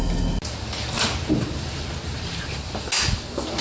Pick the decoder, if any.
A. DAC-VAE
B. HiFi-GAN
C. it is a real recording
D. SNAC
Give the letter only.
C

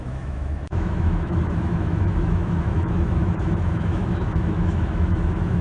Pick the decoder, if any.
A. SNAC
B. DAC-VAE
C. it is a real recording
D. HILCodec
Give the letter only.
B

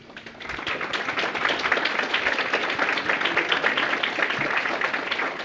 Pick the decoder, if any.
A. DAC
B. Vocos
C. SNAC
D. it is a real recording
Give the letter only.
D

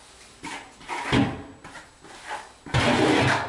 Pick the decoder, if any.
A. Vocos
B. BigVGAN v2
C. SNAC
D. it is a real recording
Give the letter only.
D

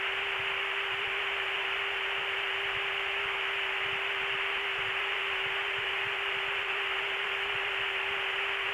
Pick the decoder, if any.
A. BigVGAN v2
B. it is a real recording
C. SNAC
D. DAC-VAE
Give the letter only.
A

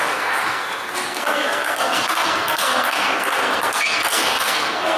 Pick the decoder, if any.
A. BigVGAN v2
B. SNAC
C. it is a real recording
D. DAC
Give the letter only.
B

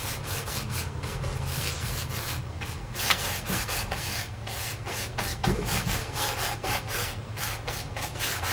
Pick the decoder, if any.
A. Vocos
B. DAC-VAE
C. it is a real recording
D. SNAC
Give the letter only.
D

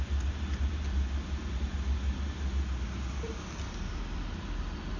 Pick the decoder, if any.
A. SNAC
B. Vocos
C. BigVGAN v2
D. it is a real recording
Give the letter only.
D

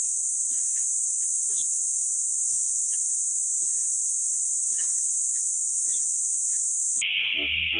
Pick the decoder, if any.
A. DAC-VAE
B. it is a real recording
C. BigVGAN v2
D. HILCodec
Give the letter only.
A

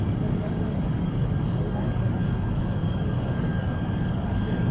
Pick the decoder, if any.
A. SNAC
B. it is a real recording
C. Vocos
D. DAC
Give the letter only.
D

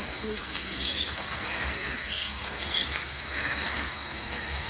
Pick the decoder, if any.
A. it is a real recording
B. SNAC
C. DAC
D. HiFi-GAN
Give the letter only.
B